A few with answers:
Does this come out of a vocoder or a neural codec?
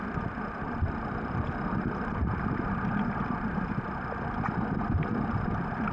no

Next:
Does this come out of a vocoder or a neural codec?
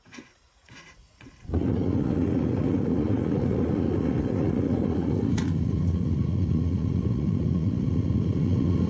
yes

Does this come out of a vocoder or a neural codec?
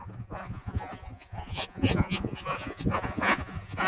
yes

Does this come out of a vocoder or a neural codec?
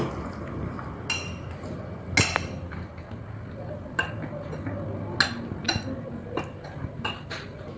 no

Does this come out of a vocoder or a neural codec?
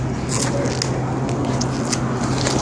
no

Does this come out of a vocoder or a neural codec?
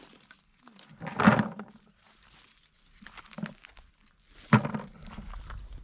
no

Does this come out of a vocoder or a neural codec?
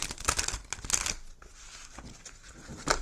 no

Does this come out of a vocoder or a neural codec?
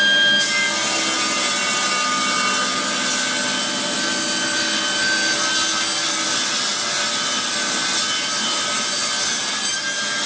no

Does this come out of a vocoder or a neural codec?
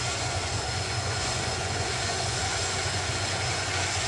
yes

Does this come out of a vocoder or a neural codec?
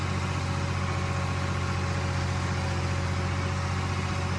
no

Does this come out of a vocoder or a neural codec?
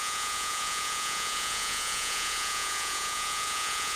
yes